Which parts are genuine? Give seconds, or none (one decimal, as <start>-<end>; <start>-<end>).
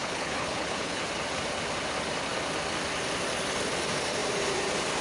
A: 1.0-5.0